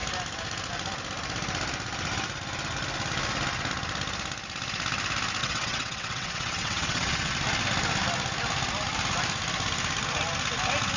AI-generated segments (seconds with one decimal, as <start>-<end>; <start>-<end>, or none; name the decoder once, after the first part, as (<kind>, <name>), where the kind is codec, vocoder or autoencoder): 5.4-7.3 (vocoder, WaveNeXt)